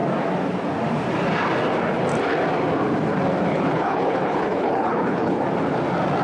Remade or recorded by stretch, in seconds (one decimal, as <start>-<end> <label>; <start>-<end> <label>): 0.0-3.5 recorded; 3.5-5.4 remade; 5.4-6.2 recorded

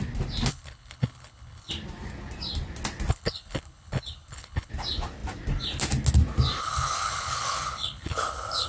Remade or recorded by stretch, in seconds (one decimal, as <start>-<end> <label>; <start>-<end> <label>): 0.0-0.5 recorded; 0.5-1.7 remade; 1.7-3.1 recorded; 3.1-4.7 remade; 4.7-6.6 recorded; 6.6-8.7 remade

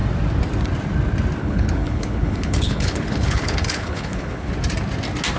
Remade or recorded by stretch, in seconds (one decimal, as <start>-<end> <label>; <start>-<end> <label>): 0.0-1.4 recorded; 1.4-4.5 remade; 4.5-5.4 recorded

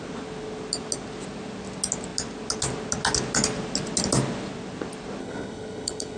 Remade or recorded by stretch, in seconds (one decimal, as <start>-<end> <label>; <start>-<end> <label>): 0.0-5.2 recorded; 5.2-6.2 remade

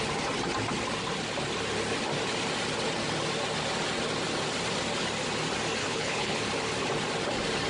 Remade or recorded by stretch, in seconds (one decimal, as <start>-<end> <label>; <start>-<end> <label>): 0.0-5.8 recorded; 5.8-6.4 remade; 6.4-7.7 recorded

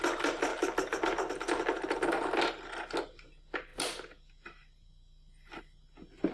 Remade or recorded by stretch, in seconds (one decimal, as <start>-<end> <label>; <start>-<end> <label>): 0.0-6.3 recorded

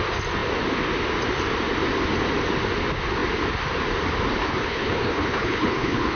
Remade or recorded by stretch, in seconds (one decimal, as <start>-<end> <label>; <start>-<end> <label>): 0.0-4.4 recorded; 4.4-6.2 remade